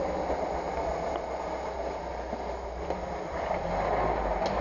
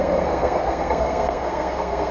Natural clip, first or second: first